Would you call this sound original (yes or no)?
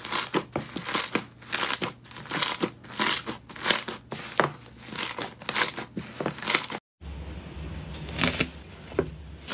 yes